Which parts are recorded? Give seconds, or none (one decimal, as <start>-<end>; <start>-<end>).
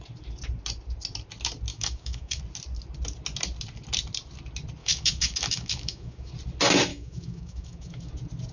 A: 0.0-1.7; 2.4-4.8; 6.3-6.9; 8.1-8.5